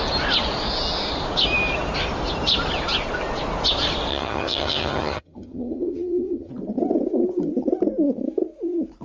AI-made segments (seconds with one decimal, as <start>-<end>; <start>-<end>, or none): 4.1-6.5